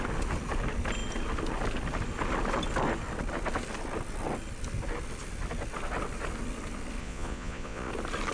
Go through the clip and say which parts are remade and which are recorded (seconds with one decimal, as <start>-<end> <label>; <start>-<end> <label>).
0.0-7.0 recorded; 7.0-7.9 remade; 7.9-8.3 recorded